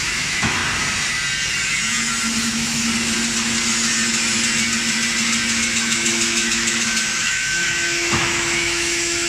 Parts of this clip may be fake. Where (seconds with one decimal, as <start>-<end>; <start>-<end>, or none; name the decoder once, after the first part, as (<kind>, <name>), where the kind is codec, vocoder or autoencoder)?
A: 0.0-0.6 (autoencoder, DAC-VAE); 2.4-2.9; 5.7-9.3